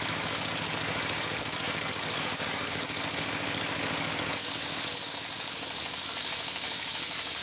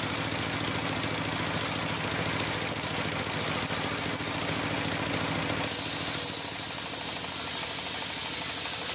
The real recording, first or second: second